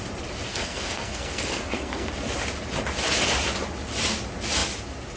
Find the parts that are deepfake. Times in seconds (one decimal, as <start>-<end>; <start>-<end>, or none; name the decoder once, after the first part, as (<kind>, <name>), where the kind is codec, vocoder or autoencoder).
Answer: 0.5-2.1 (codec, SNAC)

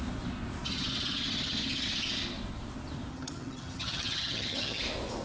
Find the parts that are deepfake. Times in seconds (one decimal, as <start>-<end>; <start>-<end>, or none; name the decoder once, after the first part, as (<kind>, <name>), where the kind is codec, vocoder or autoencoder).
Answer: 3.1-4.8 (vocoder, HiFi-GAN)

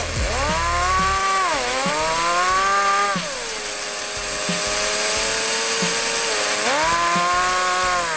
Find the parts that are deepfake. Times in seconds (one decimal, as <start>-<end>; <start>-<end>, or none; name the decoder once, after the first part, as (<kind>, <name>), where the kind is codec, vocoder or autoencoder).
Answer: 1.2-1.9 (autoencoder, DAC-VAE)

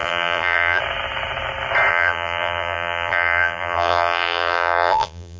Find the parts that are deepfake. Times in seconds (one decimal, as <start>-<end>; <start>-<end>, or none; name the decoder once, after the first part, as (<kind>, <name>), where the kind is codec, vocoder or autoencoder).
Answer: 0.0-0.8 (vocoder, BigVGAN v2); 1.9-5.4

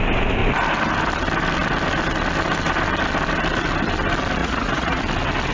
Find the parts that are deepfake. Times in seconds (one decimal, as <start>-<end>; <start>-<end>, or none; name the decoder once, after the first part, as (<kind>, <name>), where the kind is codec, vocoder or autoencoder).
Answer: 4.4-5.0 (vocoder, Vocos)

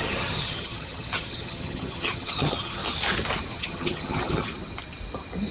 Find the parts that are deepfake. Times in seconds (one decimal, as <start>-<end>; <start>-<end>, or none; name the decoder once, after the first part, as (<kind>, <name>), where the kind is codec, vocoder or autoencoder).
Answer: 0.0-2.8 (vocoder, HiFi-GAN); 3.5-4.5